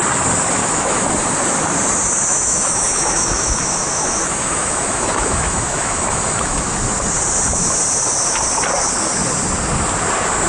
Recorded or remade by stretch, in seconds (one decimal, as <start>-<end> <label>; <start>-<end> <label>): 0.0-0.6 recorded; 0.6-1.1 remade; 1.1-2.3 recorded; 2.3-6.6 remade; 6.6-10.5 recorded